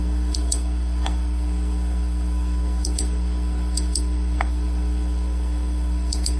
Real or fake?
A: fake